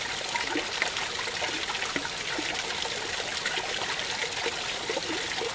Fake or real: real